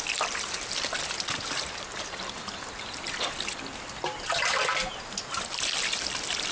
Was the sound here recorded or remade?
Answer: recorded